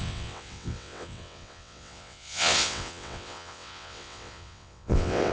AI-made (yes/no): yes